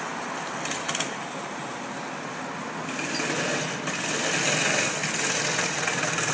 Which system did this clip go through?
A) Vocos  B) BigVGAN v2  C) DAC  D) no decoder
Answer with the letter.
D